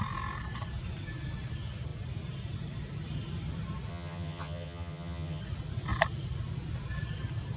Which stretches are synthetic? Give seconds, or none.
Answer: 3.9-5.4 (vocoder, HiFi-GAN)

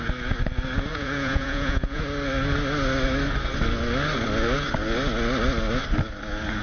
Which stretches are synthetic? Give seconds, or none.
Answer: 0.9-2.0 (vocoder, Vocos)

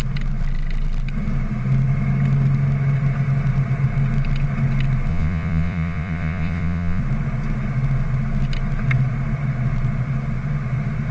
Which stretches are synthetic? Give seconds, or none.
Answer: 5.1-7.0 (vocoder, Vocos)

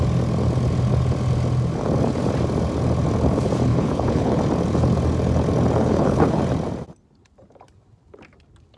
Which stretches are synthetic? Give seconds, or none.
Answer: 3.7-4.4 (codec, HILCodec); 5.8-6.4

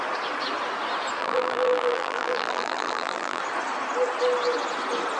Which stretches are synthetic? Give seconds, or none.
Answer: 1.2-3.4 (vocoder, BigVGAN v2)

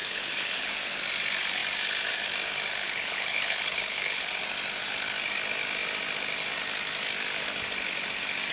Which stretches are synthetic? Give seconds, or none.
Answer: 0.0-0.7 (codec, HILCodec); 2.7-4.3

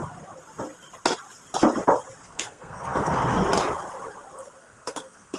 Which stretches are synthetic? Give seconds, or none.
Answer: 2.2-3.2 (codec, SNAC); 4.6-5.4